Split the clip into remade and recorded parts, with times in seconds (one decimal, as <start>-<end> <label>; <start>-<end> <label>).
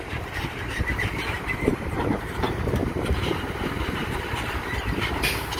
0.0-1.7 remade; 1.7-2.3 recorded; 2.3-5.6 remade